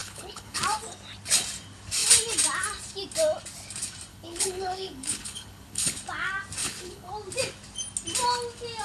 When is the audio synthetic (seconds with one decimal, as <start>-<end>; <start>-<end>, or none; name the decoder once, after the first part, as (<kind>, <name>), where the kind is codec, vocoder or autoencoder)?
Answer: 0.0-0.6 (codec, HILCodec); 4.1-6.0; 6.6-7.1